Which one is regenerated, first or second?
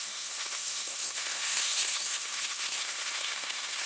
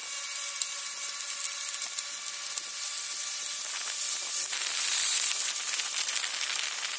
first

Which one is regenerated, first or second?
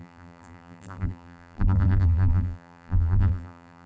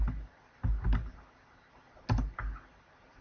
first